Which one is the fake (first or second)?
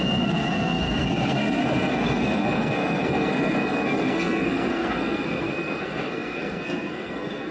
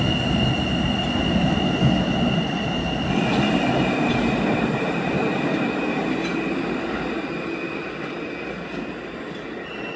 first